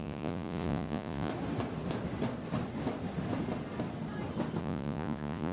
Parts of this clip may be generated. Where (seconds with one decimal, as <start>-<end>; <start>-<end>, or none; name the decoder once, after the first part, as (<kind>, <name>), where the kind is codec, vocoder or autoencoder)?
0.0-1.3 (vocoder, Vocos); 4.6-5.5